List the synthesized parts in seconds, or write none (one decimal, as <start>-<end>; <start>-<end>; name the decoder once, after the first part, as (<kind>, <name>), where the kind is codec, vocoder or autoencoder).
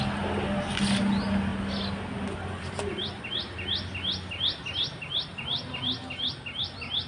none